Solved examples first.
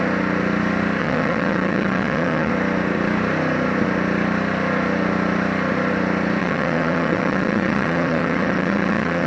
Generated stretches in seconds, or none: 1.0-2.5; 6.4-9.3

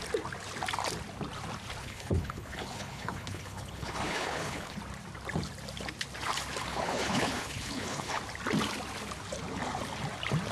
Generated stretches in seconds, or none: 1.8-4.8; 6.7-8.2